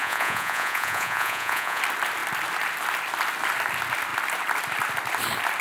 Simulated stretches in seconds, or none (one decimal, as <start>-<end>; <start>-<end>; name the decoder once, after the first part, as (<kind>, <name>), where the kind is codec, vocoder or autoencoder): 0.0-1.8 (vocoder, Vocos)